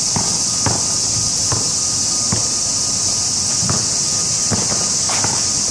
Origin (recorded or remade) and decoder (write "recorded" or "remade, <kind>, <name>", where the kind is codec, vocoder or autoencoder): recorded